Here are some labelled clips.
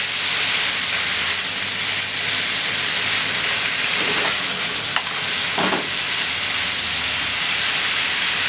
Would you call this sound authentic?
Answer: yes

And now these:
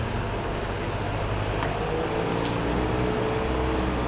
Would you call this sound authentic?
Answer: yes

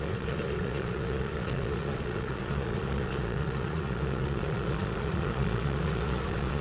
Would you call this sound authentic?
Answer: no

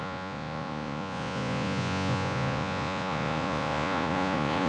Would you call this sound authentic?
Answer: no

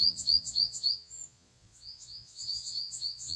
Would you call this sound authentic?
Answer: no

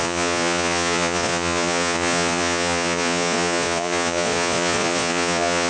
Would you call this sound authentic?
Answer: no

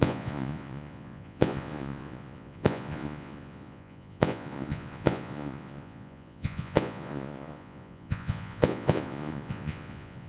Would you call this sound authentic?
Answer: no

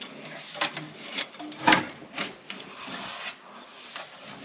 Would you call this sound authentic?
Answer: yes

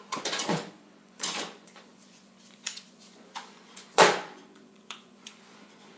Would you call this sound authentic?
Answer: no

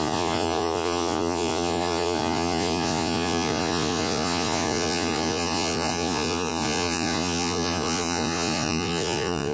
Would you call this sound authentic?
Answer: no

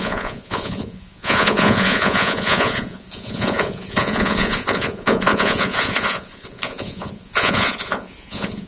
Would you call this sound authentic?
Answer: no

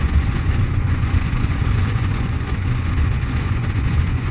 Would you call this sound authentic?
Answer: no